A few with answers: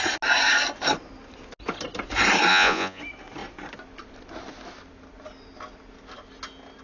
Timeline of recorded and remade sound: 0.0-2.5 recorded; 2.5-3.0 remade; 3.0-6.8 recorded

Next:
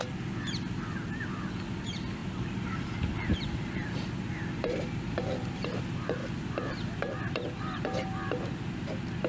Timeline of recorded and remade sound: 0.0-2.2 recorded; 2.2-5.8 remade; 5.8-6.2 recorded; 6.2-7.2 remade; 7.2-9.3 recorded

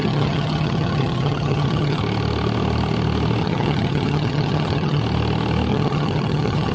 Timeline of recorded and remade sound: 0.0-2.0 remade; 2.0-3.4 recorded; 3.4-5.0 remade; 5.0-5.7 recorded; 5.7-6.7 remade

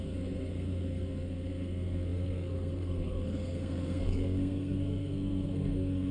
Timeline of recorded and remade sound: 0.0-6.1 remade

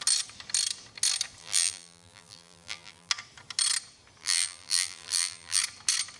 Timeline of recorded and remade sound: 0.0-1.4 recorded; 1.4-3.1 remade; 3.1-4.2 recorded; 4.2-5.6 remade; 5.6-6.2 recorded